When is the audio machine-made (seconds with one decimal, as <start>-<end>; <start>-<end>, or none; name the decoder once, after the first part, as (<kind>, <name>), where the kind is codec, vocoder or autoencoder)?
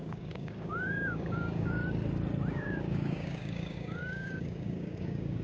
0.0-1.8 (codec, DAC); 2.5-5.4